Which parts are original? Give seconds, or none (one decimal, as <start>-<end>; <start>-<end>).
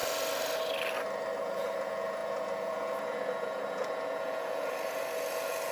0.0-1.4